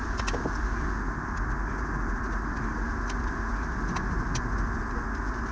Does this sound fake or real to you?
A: real